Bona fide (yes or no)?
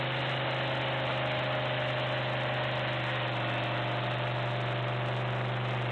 yes